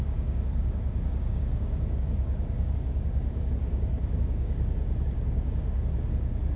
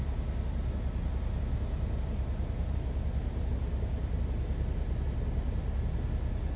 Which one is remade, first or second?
first